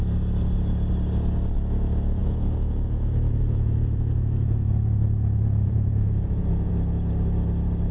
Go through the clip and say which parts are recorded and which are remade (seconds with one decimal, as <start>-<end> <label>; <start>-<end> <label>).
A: 0.0-2.2 recorded; 2.2-6.7 remade; 6.7-7.9 recorded